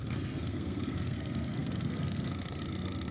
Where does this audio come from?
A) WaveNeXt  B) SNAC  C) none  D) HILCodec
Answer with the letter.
B